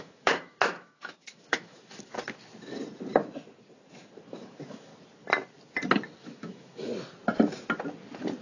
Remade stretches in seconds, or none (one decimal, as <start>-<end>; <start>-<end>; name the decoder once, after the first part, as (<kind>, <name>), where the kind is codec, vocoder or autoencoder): 0.0-2.1 (autoencoder, DAC-VAE); 4.3-4.9; 6.2-6.9